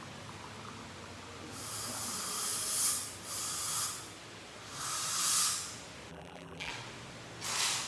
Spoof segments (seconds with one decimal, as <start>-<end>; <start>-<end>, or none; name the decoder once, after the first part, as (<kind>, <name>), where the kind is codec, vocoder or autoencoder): 6.1-6.7 (vocoder, BigVGAN v2)